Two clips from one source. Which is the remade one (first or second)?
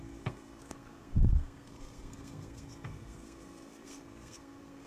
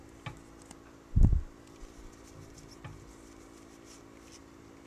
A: first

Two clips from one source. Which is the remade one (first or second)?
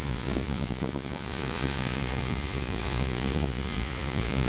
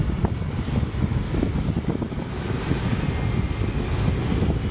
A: first